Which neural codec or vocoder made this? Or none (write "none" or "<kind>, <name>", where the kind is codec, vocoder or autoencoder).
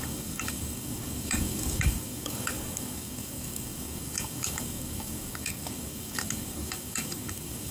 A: codec, DAC